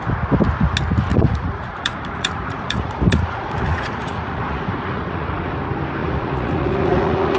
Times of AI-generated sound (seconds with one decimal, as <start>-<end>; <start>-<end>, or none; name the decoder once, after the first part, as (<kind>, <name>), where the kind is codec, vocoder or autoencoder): 1.1-5.5 (vocoder, Vocos); 6.0-7.4